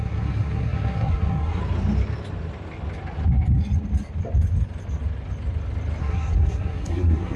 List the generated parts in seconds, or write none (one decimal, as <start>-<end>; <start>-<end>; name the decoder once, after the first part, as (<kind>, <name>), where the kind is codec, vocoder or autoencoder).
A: 0.0-1.6 (codec, SNAC); 6.0-7.4